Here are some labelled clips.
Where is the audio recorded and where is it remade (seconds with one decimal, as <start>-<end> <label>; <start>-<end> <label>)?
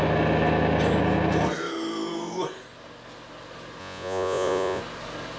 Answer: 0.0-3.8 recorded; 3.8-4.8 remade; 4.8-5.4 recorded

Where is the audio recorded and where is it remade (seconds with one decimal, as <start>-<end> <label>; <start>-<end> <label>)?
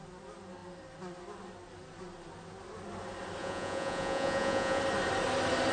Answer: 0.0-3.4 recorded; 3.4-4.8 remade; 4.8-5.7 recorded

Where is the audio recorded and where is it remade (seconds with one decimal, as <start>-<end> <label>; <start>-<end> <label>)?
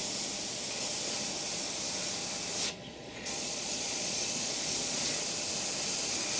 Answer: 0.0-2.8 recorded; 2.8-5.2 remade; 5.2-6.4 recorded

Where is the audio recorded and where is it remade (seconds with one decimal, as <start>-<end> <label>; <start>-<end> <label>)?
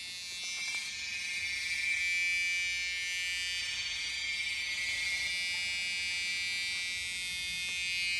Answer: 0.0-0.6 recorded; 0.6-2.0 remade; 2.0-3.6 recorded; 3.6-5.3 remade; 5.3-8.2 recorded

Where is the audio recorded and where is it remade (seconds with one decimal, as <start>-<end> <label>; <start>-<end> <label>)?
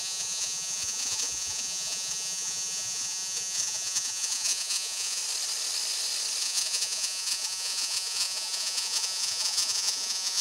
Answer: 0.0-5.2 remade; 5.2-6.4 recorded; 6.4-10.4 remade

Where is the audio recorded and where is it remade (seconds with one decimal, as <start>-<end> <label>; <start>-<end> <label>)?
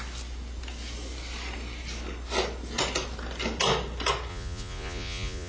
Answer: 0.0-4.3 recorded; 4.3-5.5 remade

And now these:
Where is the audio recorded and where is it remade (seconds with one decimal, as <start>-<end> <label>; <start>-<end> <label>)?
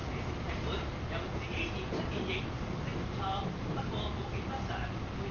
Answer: 0.0-5.3 recorded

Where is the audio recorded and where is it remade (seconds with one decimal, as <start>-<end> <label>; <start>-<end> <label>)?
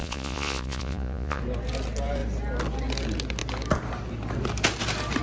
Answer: 0.0-1.4 remade; 1.4-5.2 recorded